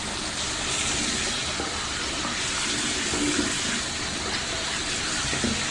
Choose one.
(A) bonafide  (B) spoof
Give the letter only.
A